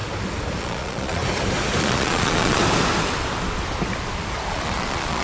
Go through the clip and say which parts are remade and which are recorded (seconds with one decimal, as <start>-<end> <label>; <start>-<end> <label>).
0.0-0.6 recorded; 0.6-1.2 remade; 1.2-1.8 recorded; 1.8-2.6 remade; 2.6-4.5 recorded; 4.5-5.2 remade